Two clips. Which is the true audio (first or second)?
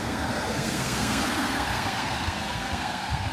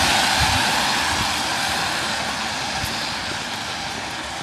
second